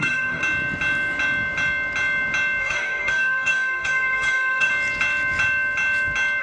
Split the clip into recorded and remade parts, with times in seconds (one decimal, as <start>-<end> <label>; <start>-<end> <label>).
0.0-0.4 remade; 0.4-2.6 recorded; 2.6-4.7 remade; 4.7-6.4 recorded